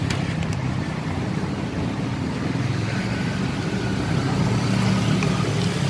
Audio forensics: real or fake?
real